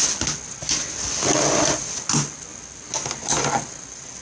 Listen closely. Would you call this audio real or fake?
real